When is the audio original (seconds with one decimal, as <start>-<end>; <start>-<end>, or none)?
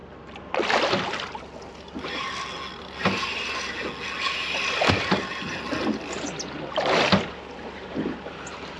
0.0-8.8